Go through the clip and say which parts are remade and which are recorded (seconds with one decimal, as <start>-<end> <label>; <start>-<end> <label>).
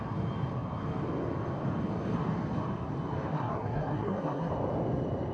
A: 0.0-3.3 recorded; 3.3-4.5 remade; 4.5-5.3 recorded